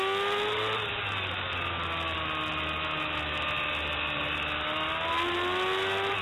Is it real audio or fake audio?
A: real